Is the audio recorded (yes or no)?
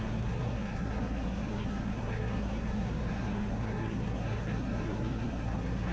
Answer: no